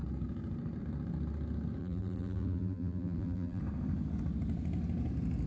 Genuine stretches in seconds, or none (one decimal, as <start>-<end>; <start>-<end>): 0.0-1.8; 3.6-5.5